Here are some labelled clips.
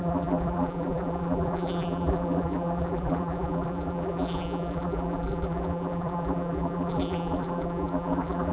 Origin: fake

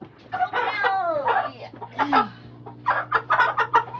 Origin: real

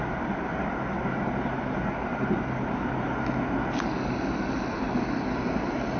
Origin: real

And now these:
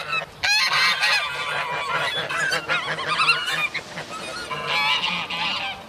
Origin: real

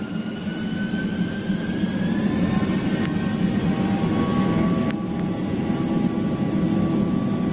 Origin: real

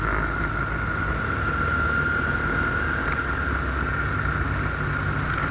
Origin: real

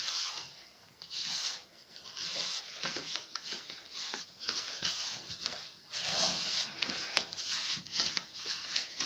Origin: fake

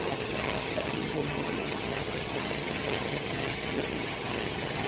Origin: fake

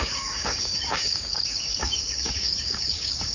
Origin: fake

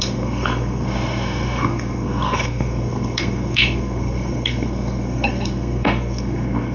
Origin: fake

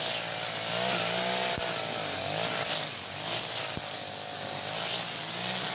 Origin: real